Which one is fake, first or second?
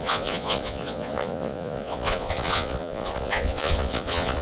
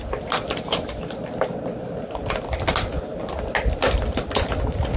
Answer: first